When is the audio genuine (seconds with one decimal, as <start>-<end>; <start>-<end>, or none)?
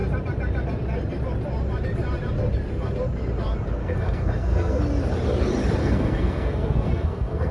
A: 0.0-3.8; 4.8-5.8